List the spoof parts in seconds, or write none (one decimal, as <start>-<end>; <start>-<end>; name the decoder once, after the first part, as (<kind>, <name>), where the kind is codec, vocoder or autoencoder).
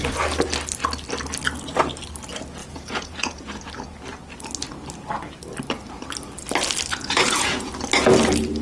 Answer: 2.6-3.6 (vocoder, Vocos); 6.9-7.7